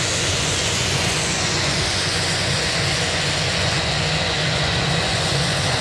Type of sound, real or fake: fake